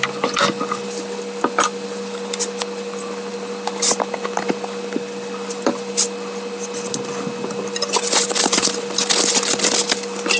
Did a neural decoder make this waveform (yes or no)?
no